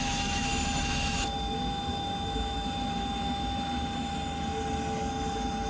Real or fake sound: fake